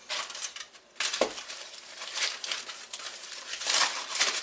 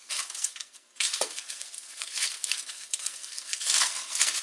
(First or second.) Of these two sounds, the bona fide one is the first